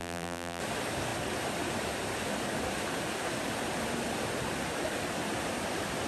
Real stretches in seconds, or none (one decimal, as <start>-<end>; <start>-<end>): 0.6-6.1